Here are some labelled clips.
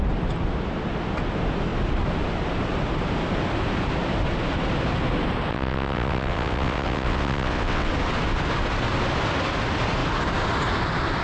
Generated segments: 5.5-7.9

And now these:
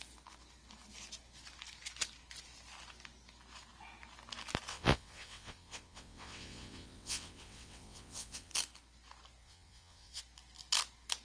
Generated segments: 4.7-8.5; 9.4-10.2

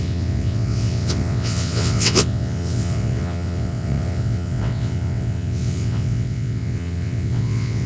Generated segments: 0.0-7.9

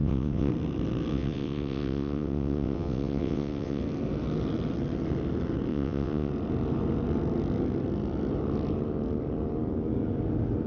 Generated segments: 0.0-0.5; 1.1-3.8; 5.7-6.3